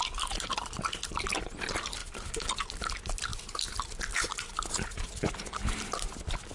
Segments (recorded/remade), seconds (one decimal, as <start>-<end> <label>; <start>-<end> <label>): 0.0-2.0 recorded; 2.0-2.6 remade; 2.6-3.3 recorded; 3.3-4.7 remade; 4.7-6.5 recorded